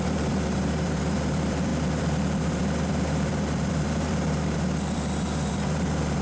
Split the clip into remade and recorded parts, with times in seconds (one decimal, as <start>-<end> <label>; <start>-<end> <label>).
0.0-6.2 remade